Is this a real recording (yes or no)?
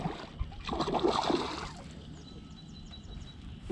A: yes